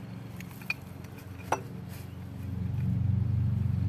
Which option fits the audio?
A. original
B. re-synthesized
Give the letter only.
A